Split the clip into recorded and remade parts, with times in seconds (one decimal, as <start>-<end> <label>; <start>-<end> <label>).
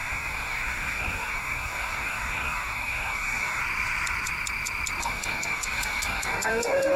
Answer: 0.0-3.6 remade; 3.6-5.0 recorded; 5.0-7.0 remade